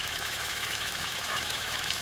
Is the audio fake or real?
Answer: fake